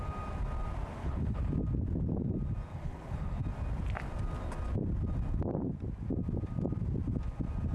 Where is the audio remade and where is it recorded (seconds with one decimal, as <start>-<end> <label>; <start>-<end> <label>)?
0.0-1.0 recorded; 1.0-1.5 remade; 1.5-2.7 recorded; 2.7-3.4 remade; 3.4-7.7 recorded